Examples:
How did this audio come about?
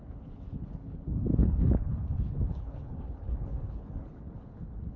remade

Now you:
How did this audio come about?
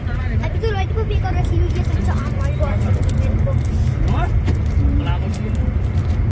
recorded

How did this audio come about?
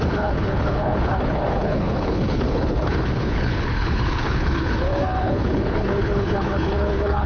remade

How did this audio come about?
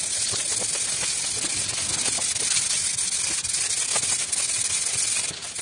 recorded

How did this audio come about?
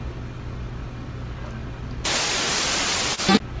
recorded